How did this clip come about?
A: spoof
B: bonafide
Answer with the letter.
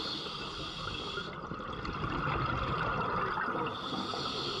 B